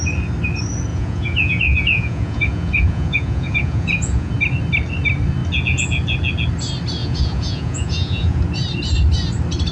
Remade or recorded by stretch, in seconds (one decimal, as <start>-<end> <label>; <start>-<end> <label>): 0.0-0.9 recorded; 0.9-4.3 remade; 4.3-7.0 recorded; 7.0-8.4 remade; 8.4-9.7 recorded